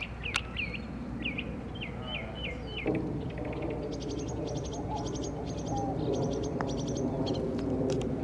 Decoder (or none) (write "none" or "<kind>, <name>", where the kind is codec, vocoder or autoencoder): none